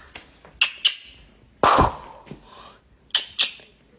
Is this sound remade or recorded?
recorded